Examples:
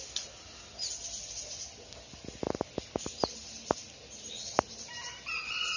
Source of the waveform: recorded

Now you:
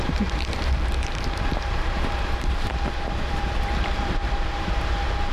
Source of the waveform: remade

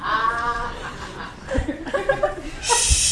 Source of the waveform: remade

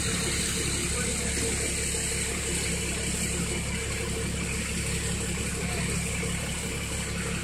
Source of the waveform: recorded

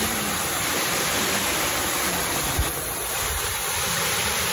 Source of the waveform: remade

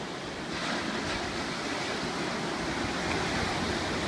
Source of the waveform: recorded